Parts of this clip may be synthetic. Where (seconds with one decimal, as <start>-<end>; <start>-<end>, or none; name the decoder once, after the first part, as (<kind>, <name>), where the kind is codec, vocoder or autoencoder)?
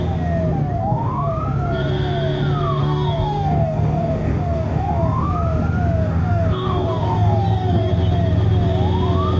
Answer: 0.8-1.3 (codec, DAC); 2.8-5.3; 6.0-7.9